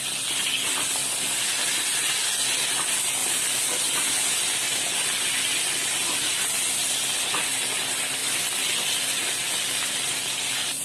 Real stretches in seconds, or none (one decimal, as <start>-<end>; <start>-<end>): 0.0-10.8